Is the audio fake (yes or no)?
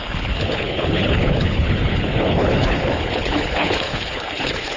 yes